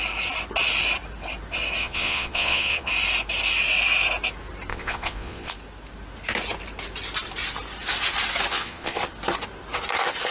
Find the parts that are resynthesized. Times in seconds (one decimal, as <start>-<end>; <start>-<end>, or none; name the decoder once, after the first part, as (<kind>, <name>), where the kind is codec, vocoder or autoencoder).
1.8-2.9 (vocoder, Vocos); 4.7-5.5; 8.5-9.0